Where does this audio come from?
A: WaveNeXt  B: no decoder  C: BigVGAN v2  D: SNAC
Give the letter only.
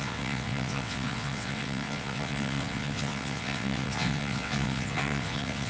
A